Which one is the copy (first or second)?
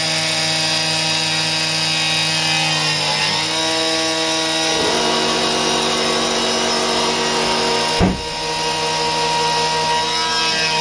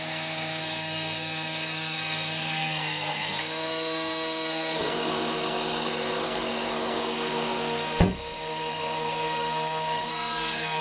second